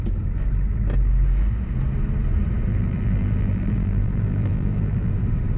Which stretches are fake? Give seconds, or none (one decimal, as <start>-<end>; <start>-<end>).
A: 2.7-5.1